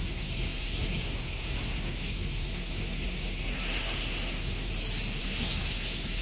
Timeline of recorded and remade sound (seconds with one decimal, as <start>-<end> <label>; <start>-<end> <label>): 0.0-4.7 remade; 4.7-5.2 recorded; 5.2-6.2 remade